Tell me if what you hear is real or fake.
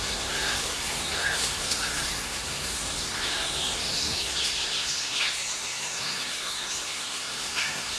fake